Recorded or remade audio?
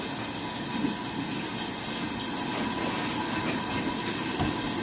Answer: recorded